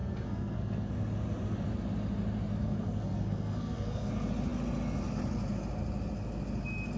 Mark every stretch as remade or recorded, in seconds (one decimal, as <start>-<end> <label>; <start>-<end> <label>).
0.0-0.9 remade; 0.9-2.6 recorded; 2.6-4.1 remade; 4.1-7.0 recorded